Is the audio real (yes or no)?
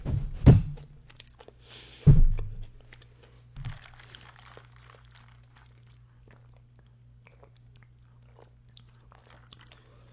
yes